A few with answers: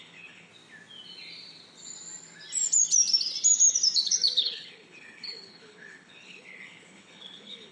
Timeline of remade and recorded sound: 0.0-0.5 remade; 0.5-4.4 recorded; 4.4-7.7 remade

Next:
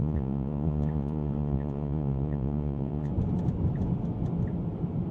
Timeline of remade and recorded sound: 0.0-3.1 remade; 3.1-5.1 recorded

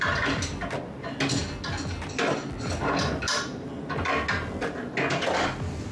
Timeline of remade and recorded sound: 0.0-5.9 recorded

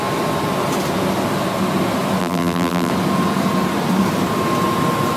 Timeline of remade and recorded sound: 0.0-2.2 recorded; 2.2-2.9 remade; 2.9-5.2 recorded

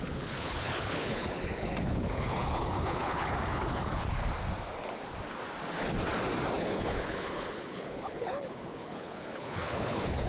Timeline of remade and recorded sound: 0.0-4.2 remade; 4.2-6.6 recorded; 6.6-10.3 remade

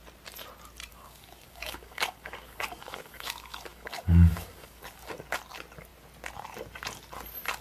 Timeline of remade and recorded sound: 0.0-0.9 recorded; 0.9-5.1 remade; 5.1-7.6 recorded

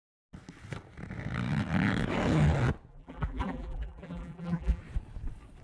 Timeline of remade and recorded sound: 0.0-2.9 recorded; 2.9-4.8 remade; 4.8-5.6 recorded

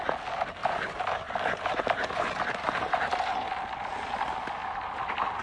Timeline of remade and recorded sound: 0.0-0.6 recorded; 0.6-3.5 remade; 3.5-5.4 recorded